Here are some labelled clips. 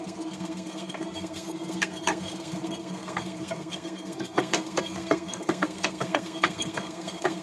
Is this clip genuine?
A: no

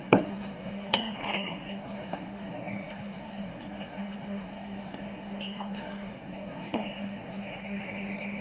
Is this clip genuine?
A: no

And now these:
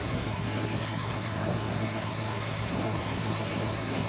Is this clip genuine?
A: no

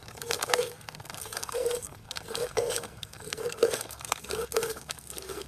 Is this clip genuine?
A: no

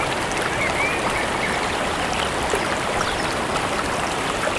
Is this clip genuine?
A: yes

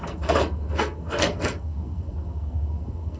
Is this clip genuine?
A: no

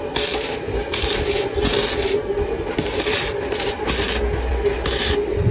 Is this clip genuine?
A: yes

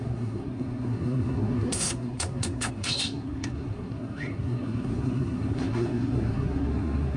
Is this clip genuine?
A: no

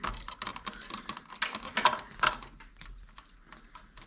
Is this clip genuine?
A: yes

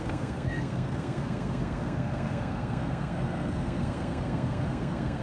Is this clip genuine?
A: no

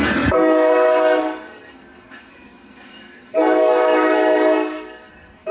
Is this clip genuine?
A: no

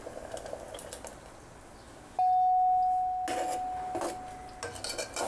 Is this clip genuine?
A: yes